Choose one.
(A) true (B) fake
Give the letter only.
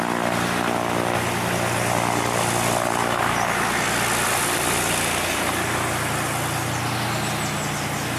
A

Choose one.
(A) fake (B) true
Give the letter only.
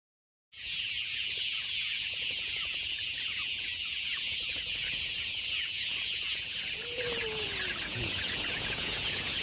A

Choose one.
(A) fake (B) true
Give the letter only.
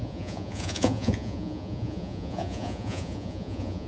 A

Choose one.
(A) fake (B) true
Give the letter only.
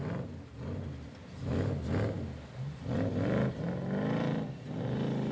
B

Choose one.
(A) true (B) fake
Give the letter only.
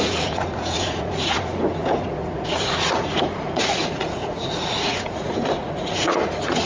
B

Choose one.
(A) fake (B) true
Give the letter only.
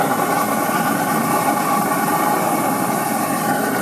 B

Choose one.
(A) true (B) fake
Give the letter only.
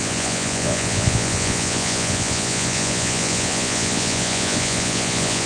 B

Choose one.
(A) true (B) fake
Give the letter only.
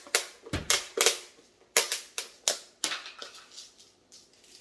A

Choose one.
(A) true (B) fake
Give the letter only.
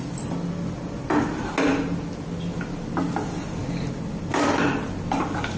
A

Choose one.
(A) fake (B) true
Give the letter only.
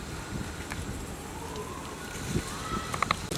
B